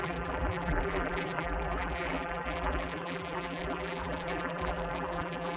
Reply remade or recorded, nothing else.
remade